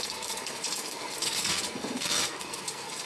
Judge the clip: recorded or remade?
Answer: remade